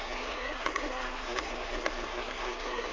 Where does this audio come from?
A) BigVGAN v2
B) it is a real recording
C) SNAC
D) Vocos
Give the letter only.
C